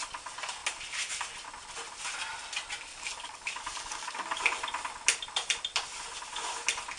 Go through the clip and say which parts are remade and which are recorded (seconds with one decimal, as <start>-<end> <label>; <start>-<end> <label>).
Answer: 0.0-2.9 recorded; 2.9-4.4 remade; 4.4-7.0 recorded